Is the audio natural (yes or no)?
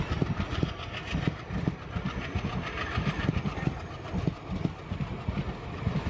yes